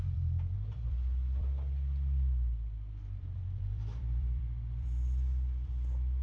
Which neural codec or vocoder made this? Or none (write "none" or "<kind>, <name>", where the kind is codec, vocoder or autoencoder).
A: vocoder, BigVGAN v2